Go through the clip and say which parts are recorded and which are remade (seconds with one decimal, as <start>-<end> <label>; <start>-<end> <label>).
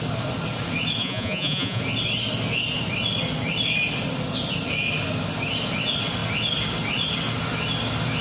0.0-1.0 recorded; 1.0-1.8 remade; 1.8-8.2 recorded